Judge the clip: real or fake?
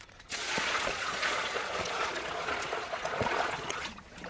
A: fake